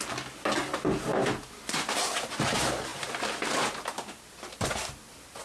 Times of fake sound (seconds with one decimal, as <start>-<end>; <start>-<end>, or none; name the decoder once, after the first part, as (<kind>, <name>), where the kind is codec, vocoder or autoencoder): none